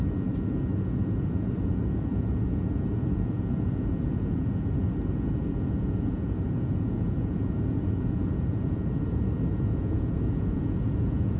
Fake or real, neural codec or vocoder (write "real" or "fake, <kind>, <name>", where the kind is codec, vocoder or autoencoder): fake, vocoder, Vocos